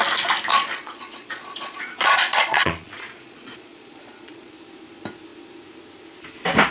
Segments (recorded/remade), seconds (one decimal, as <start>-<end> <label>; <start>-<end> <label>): 0.0-0.5 recorded; 0.5-4.5 remade; 4.5-6.7 recorded